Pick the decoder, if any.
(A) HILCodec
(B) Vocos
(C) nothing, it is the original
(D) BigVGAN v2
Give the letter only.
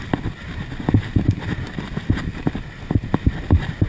C